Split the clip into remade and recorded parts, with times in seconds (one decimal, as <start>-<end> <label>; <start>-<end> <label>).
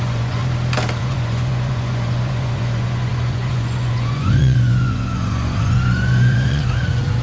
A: 0.0-0.4 remade; 0.4-1.0 recorded; 1.0-7.2 remade